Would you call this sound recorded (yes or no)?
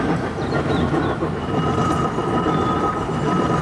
no